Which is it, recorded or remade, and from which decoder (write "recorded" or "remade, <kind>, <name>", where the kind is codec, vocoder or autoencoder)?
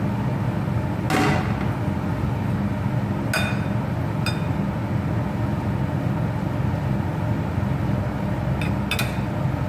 recorded